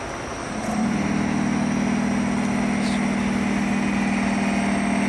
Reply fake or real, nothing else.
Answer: real